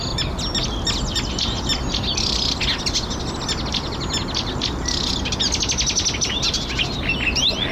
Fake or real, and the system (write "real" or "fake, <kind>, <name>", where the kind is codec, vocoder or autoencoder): real